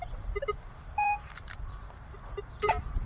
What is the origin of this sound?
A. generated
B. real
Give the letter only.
A